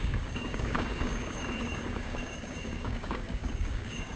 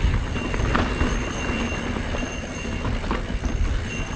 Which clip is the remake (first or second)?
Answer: first